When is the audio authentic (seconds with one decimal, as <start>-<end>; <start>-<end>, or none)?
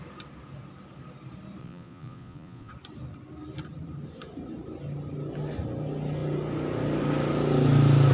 0.0-1.6; 2.7-8.1